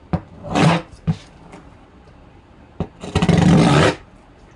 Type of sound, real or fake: real